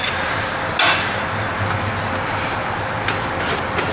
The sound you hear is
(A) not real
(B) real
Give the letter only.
B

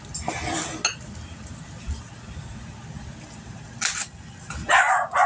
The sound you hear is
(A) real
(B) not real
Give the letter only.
A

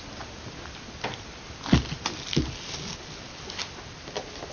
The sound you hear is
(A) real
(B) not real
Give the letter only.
A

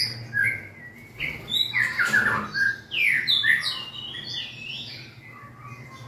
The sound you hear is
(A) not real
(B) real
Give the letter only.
B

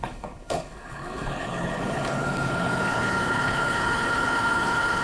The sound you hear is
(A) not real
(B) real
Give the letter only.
A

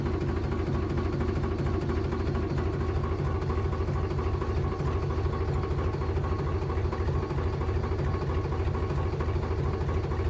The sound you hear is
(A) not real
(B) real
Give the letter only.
B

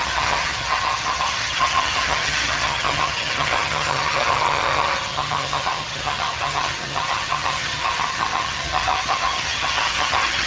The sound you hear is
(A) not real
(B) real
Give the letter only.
A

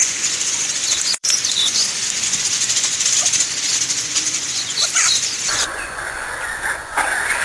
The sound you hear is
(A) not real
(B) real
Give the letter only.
A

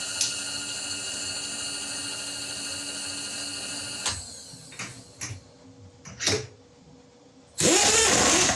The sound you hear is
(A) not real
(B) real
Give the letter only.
B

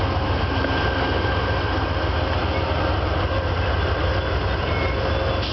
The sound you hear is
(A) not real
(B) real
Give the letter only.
B